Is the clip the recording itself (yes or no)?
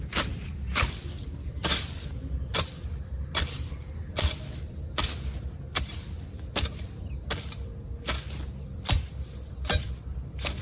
yes